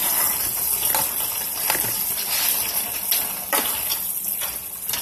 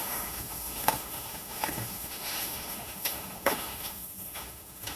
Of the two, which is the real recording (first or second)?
first